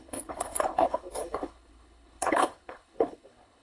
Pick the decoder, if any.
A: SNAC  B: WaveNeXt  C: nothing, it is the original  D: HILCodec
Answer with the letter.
D